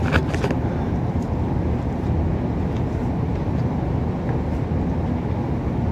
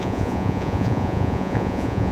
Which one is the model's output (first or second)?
second